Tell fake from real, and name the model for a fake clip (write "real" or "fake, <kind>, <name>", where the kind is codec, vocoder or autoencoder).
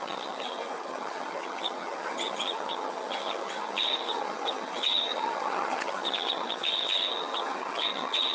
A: fake, vocoder, HiFi-GAN